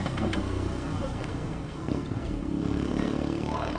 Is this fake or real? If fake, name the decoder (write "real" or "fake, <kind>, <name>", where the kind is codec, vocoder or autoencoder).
fake, codec, SNAC